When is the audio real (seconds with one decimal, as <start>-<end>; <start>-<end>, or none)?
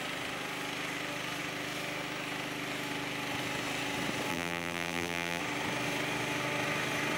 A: 0.0-4.3; 5.4-7.2